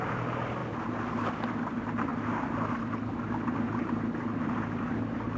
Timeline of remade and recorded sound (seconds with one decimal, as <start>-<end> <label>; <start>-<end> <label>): 0.0-5.4 recorded